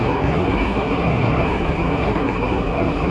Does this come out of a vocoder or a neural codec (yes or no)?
yes